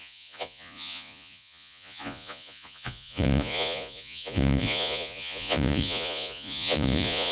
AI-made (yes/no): yes